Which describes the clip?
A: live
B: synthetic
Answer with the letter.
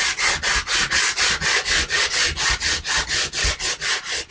A